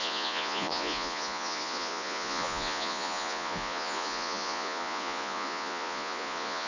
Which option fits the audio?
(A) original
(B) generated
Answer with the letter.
B